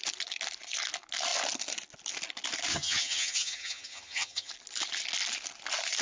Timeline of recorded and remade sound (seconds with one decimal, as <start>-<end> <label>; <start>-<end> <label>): 0.0-2.7 recorded; 2.7-4.5 remade; 4.5-6.0 recorded